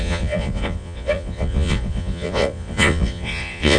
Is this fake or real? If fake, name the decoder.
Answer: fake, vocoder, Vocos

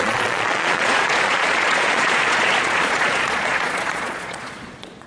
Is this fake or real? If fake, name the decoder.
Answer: fake, vocoder, Vocos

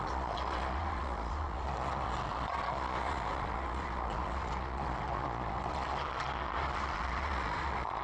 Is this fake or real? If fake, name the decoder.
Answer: fake, vocoder, Vocos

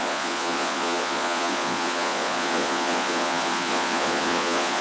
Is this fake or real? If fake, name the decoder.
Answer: fake, vocoder, Vocos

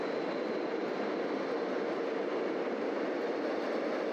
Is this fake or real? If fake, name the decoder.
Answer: real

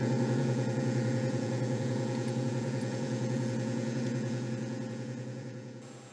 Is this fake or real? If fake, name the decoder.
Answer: fake, vocoder, Vocos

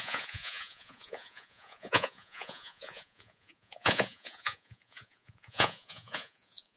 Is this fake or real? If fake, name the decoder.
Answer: fake, vocoder, Vocos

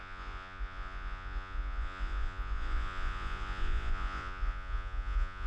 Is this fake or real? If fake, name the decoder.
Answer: fake, vocoder, Vocos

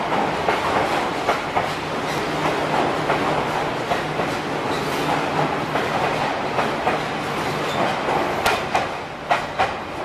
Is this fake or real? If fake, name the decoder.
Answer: real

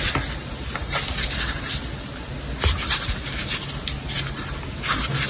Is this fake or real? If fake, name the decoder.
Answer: real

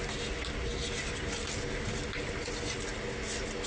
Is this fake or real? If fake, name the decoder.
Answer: real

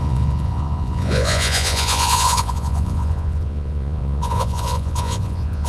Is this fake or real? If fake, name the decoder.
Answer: fake, vocoder, Vocos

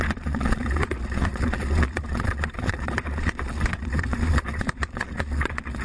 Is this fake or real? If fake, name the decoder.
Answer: fake, vocoder, Vocos